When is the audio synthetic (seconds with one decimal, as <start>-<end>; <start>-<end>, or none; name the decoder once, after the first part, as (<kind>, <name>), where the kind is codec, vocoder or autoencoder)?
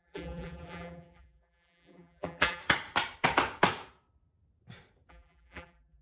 0.0-2.6 (vocoder, BigVGAN v2); 5.1-6.0